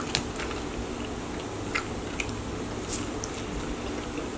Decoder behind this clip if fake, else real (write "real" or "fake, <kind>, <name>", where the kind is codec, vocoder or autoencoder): real